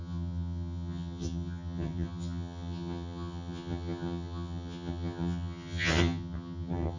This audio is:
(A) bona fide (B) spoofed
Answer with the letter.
B